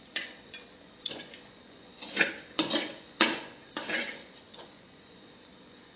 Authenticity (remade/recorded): remade